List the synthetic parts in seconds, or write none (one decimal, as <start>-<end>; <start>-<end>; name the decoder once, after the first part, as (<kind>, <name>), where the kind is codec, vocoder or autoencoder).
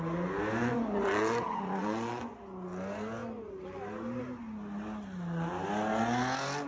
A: 0.6-2.3 (vocoder, Vocos)